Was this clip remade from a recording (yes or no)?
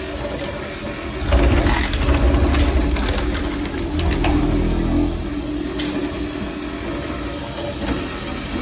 no